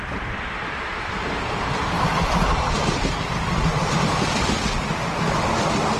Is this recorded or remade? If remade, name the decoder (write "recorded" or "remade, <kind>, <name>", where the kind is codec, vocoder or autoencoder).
recorded